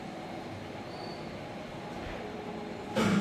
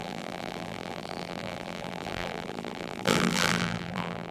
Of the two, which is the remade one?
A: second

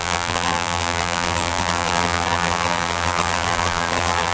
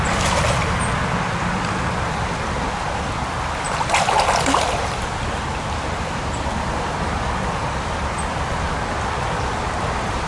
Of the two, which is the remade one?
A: first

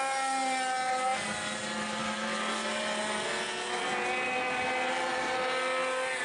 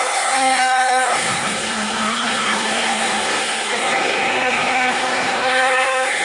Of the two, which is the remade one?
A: second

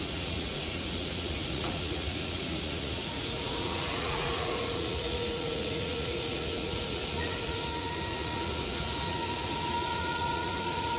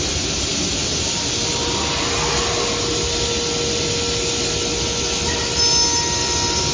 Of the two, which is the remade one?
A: first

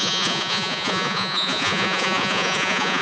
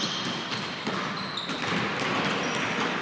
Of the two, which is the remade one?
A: first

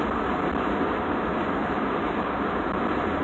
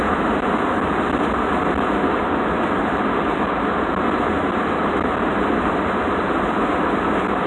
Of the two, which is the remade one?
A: second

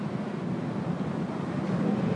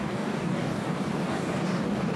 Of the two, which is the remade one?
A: second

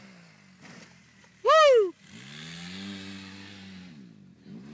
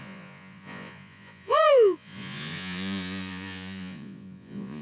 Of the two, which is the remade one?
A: second